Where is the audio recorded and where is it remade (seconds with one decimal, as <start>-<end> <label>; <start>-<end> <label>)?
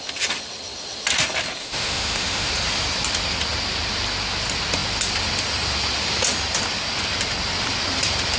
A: 0.0-1.6 recorded; 1.6-2.5 remade; 2.5-8.4 recorded